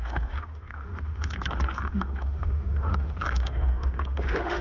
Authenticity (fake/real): fake